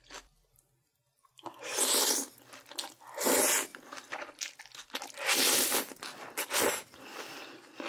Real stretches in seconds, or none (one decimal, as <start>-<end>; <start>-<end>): 0.0-3.7; 4.6-7.9